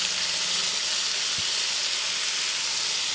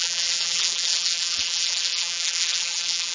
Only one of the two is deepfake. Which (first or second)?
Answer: second